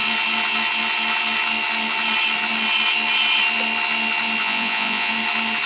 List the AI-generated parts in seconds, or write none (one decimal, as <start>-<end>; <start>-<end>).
4.4-5.1